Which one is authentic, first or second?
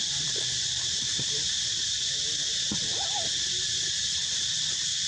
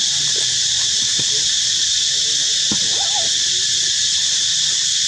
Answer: second